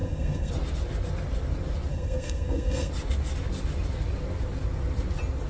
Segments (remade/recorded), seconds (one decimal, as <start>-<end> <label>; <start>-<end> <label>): 0.0-0.5 remade; 0.5-1.9 recorded; 1.9-2.9 remade; 2.9-5.5 recorded